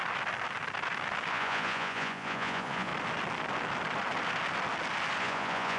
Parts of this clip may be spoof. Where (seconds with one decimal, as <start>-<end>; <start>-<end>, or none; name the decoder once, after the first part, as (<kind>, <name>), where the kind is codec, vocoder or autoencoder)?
1.3-2.9 (vocoder, Vocos); 5.2-5.8